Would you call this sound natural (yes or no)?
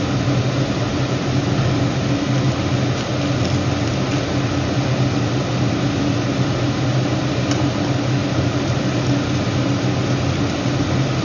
yes